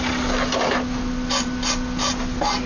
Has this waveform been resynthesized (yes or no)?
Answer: no